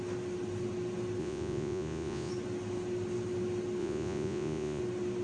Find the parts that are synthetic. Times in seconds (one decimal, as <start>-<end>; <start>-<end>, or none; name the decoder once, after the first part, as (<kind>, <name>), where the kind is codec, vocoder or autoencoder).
1.2-2.3 (vocoder, Vocos); 3.8-4.8